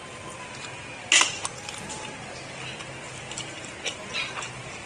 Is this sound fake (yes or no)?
no